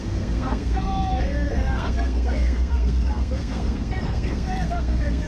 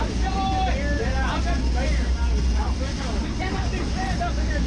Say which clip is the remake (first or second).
first